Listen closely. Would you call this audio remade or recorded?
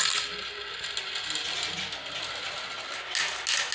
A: recorded